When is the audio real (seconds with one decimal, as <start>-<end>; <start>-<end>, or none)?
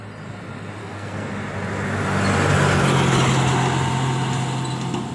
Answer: 0.0-0.8; 1.3-5.1